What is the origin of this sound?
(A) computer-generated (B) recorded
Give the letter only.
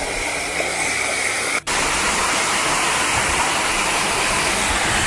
B